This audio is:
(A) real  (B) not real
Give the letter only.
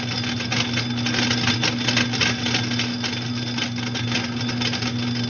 A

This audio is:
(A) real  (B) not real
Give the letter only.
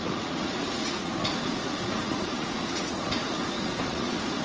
B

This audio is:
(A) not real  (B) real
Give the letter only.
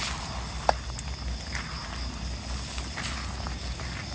B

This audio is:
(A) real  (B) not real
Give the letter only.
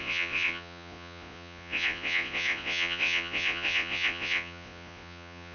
B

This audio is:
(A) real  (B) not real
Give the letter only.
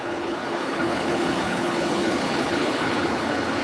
B